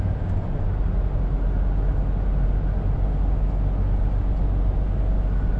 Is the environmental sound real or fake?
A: real